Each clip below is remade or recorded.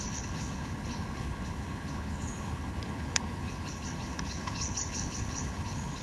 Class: remade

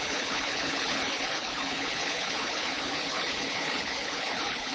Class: remade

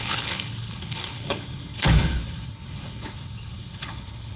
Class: remade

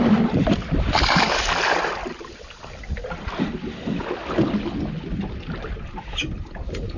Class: recorded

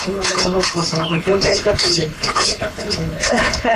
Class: remade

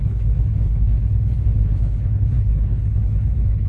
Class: remade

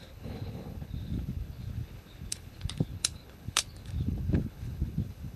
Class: remade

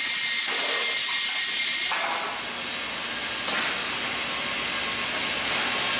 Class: recorded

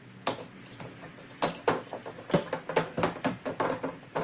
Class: recorded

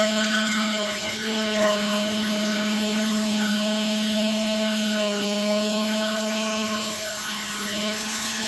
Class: remade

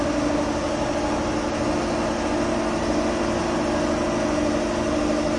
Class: recorded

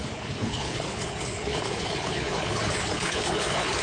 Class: remade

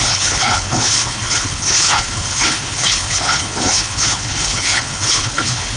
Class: remade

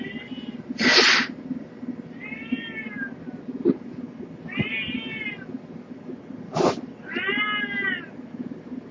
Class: recorded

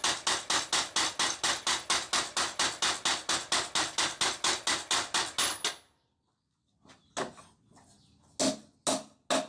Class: recorded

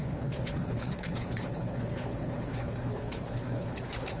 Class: remade